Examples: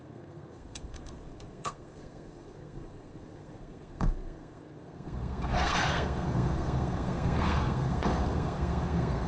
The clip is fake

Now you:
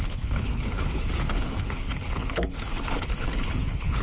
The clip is fake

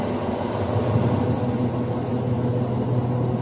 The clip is real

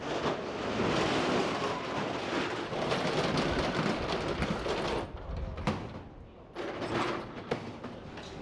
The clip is real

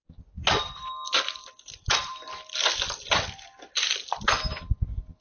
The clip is real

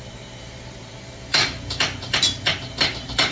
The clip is fake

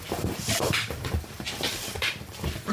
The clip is fake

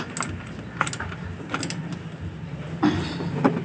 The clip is real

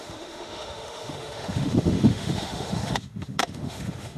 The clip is fake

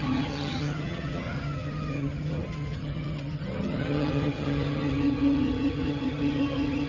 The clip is fake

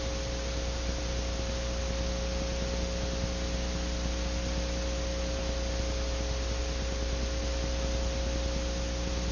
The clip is real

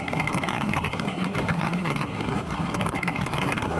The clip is fake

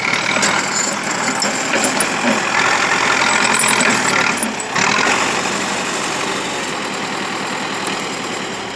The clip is real